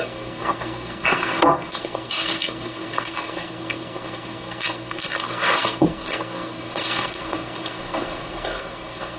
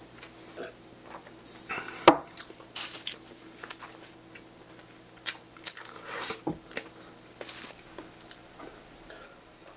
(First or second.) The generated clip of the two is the first